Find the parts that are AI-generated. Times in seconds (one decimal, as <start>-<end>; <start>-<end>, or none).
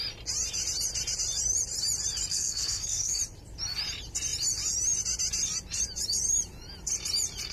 2.3-3.2